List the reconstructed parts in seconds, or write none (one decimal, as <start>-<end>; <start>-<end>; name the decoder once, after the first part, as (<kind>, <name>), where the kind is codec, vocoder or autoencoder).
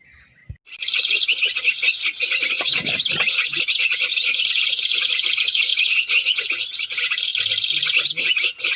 0.0-0.4 (vocoder, BigVGAN v2); 2.5-7.3; 8.2-8.8